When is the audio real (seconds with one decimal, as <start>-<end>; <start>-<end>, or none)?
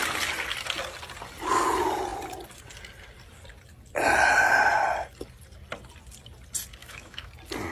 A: 0.0-6.8; 7.3-7.7